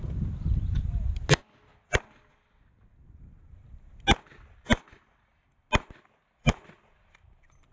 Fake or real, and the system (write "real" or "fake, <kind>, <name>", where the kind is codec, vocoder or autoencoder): real